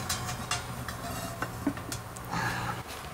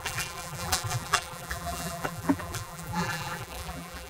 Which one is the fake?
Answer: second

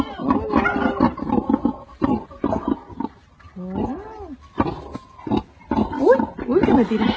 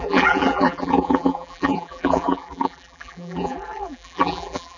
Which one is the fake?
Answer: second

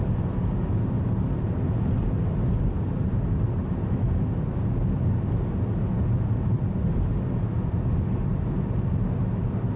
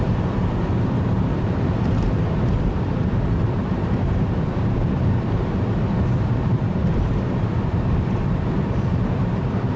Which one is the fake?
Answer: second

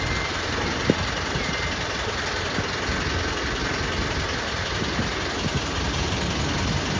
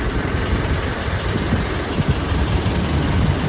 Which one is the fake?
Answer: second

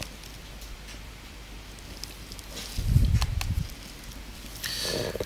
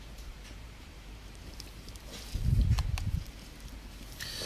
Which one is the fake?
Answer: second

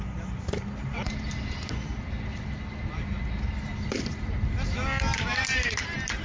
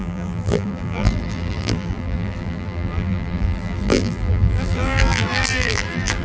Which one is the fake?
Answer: second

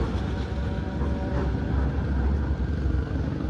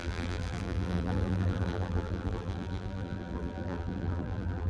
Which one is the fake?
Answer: second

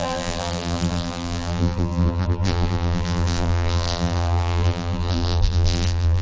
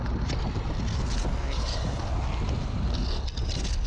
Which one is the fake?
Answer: first